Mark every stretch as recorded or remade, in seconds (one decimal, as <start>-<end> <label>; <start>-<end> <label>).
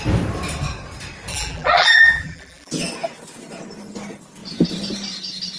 0.0-1.3 recorded; 1.3-2.7 remade; 2.7-5.6 recorded